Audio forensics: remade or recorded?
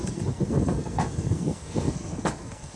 remade